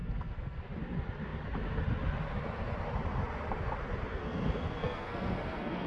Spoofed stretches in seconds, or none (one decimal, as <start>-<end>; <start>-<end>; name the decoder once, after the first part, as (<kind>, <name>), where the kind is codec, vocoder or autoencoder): 0.0-0.6 (codec, SNAC); 4.1-5.9